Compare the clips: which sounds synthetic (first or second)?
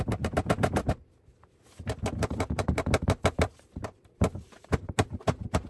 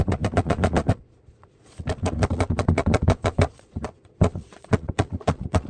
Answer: second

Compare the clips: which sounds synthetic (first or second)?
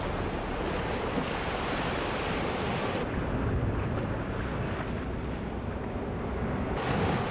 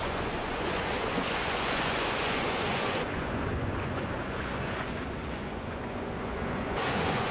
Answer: second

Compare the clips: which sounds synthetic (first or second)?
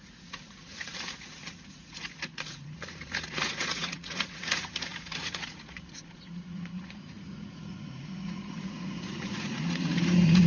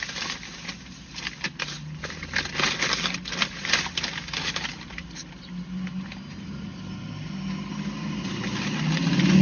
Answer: first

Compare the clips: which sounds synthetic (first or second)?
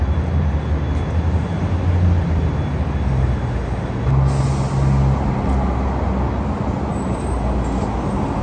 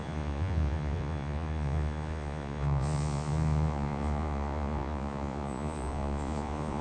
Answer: second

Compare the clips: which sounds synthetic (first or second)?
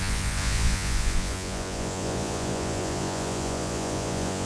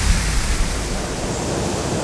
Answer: first